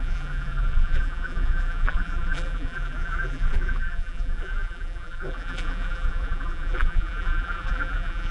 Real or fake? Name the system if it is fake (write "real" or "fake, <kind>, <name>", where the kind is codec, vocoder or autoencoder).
fake, vocoder, BigVGAN v2